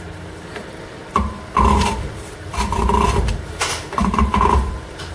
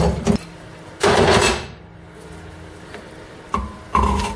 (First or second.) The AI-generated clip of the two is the first